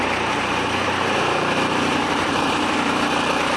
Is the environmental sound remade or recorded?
remade